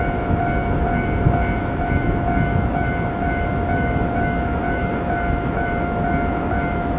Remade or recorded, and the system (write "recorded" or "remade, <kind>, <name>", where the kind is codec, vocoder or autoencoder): remade, autoencoder, DAC-VAE